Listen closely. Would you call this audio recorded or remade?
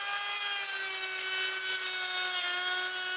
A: recorded